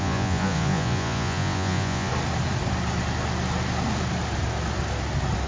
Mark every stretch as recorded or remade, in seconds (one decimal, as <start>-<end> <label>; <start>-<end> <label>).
0.0-2.1 remade; 2.1-5.5 recorded